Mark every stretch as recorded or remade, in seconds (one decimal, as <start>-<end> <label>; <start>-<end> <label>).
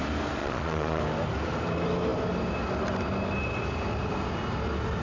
0.0-0.4 recorded; 0.4-1.0 remade; 1.0-5.0 recorded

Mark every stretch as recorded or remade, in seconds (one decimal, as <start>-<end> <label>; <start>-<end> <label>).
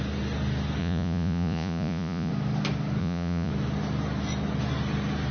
0.0-0.8 recorded; 0.8-2.3 remade; 2.3-3.0 recorded; 3.0-3.5 remade; 3.5-5.3 recorded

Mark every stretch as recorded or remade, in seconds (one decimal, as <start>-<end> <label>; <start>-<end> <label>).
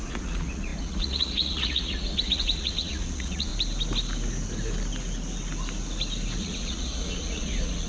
0.0-3.5 remade; 3.5-6.4 recorded; 6.4-7.9 remade